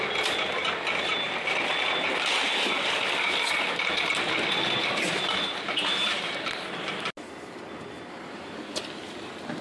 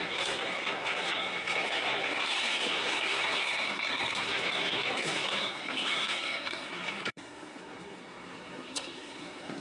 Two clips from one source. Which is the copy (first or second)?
second